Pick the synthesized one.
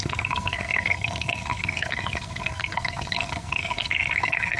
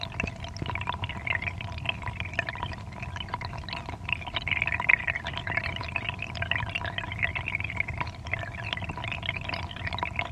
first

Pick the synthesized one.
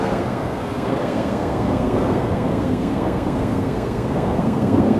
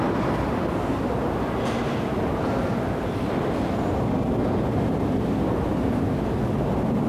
first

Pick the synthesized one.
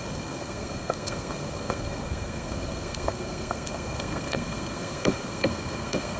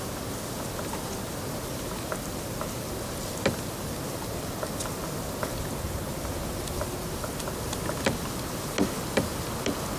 first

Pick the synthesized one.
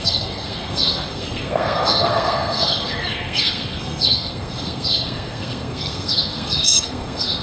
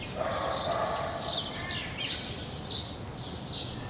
first